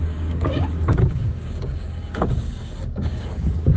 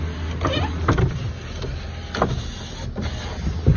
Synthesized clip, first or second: first